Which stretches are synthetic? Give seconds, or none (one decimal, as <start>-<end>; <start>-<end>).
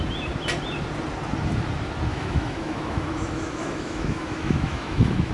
2.1-5.3